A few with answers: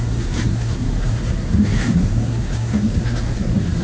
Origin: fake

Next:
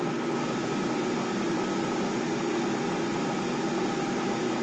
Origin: real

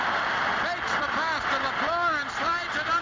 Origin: real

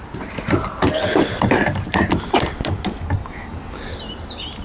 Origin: real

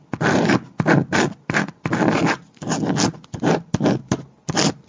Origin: real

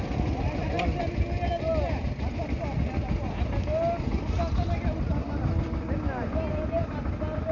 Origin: real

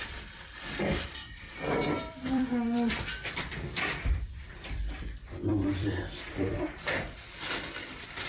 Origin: fake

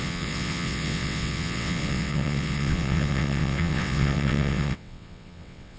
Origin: fake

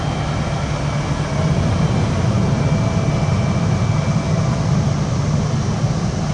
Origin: real